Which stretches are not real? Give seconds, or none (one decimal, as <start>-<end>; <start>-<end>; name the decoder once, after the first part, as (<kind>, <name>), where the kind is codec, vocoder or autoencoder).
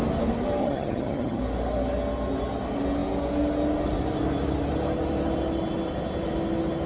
0.6-1.4 (vocoder, HiFi-GAN)